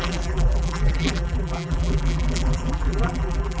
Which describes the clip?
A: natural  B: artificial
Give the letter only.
B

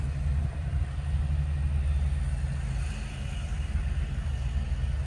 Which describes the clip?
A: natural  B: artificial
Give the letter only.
A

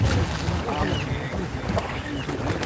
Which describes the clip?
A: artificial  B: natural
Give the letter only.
B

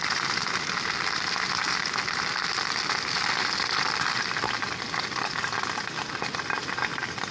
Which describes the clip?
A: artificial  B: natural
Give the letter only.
B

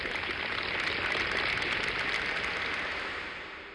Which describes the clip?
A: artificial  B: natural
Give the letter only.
B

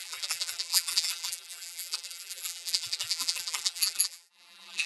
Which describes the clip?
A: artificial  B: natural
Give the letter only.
A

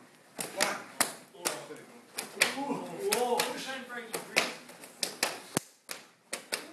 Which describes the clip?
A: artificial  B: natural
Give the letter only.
B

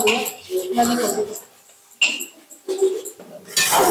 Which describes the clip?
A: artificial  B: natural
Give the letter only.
B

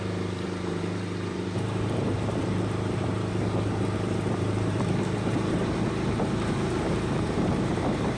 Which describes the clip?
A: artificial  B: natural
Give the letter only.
A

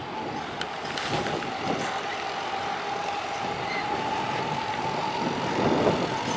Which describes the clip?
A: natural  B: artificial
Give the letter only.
A